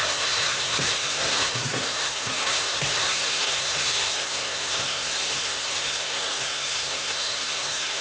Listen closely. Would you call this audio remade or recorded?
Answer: remade